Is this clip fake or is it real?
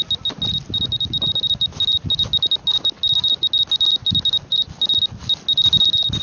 real